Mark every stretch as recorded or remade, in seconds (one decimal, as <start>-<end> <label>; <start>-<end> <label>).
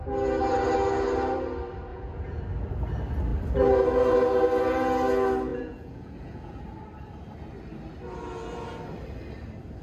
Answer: 0.0-1.9 recorded; 1.9-2.4 remade; 2.4-5.5 recorded; 5.5-6.6 remade; 6.6-9.8 recorded